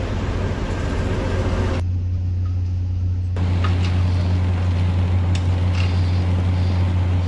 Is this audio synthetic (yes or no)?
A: no